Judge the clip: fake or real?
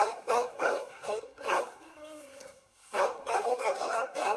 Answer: fake